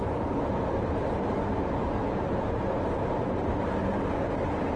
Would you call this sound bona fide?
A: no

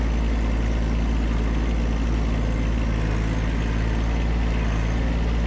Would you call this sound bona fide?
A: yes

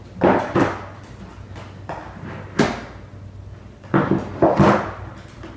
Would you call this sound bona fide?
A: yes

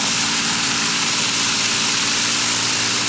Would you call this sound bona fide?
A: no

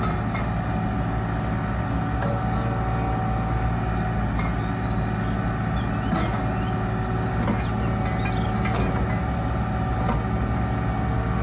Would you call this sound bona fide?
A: yes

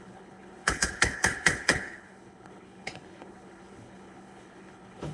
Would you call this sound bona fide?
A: no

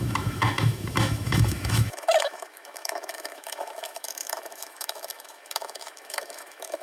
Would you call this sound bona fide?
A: no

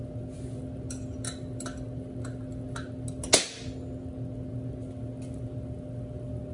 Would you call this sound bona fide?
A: yes